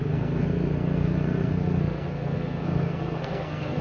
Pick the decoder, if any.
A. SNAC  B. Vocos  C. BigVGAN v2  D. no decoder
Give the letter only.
A